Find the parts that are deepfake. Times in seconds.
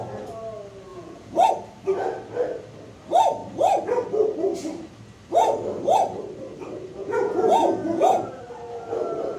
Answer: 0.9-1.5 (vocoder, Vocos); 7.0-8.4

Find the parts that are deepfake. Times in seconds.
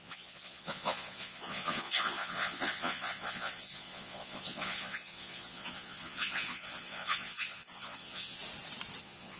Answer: 0.0-8.4 (vocoder, Vocos); 9.0-9.4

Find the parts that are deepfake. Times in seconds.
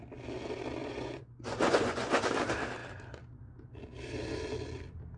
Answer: 0.8-2.2 (vocoder, Vocos)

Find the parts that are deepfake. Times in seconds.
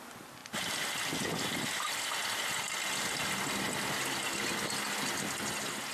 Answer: none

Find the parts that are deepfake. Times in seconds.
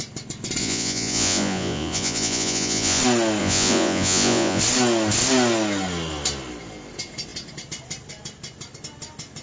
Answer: 0.6-3.0 (vocoder, Vocos); 3.4-4.6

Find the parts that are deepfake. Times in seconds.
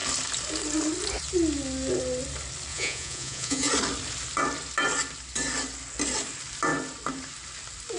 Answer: 2.7-3.7 (vocoder, Vocos)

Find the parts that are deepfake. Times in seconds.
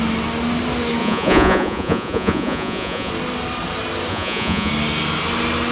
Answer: 1.0-3.1 (vocoder, Vocos); 4.1-4.7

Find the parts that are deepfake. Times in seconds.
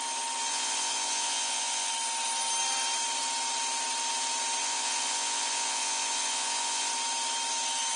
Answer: 0.5-1.9 (vocoder, Vocos); 4.6-6.9